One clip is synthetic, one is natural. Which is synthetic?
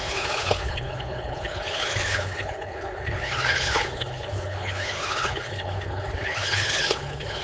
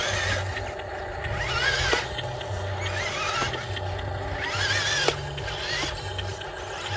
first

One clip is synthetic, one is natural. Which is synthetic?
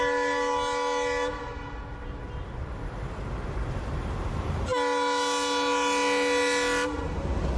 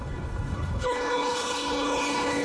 second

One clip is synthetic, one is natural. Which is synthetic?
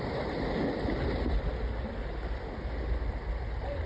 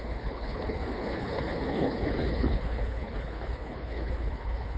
second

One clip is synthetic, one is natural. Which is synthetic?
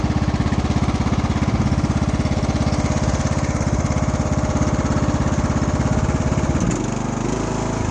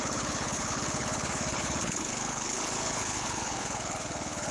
second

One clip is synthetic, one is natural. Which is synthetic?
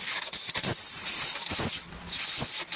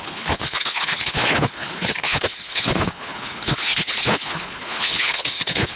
second